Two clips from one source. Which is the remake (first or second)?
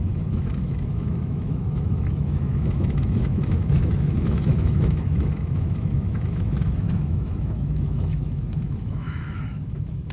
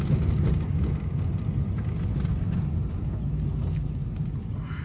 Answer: first